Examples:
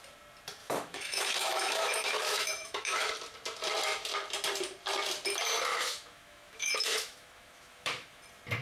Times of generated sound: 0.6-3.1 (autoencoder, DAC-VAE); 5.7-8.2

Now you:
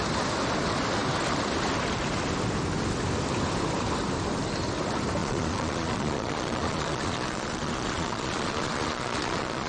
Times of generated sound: 5.2-9.7 (vocoder, Vocos)

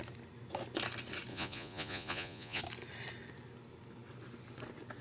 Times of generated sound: 1.3-2.6 (vocoder, Vocos)

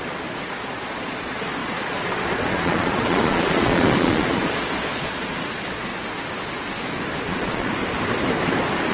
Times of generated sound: 0.5-5.9 (vocoder, Vocos); 7.2-7.8

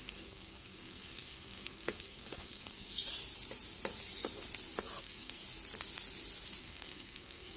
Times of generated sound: 0.0-3.0 (codec, SNAC); 5.0-5.4; 6.6-7.6